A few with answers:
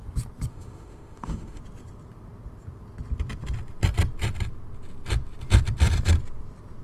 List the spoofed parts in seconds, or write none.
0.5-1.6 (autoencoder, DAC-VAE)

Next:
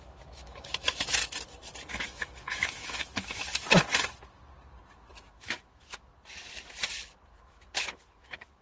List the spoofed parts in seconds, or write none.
0.0-1.2 (autoencoder, DAC-VAE); 1.9-3.5; 5.1-6.1; 7.3-8.6

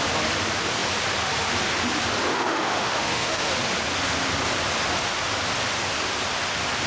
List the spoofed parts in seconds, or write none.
2.3-3.5 (autoencoder, DAC-VAE)